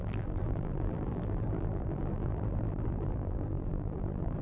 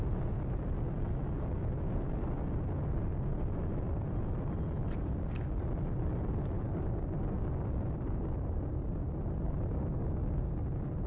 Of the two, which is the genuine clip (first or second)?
second